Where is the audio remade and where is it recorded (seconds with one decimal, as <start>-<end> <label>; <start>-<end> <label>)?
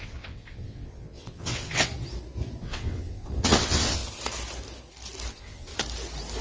0.0-1.9 remade; 1.9-2.6 recorded; 2.6-4.0 remade; 4.0-5.3 recorded; 5.3-5.7 remade; 5.7-6.4 recorded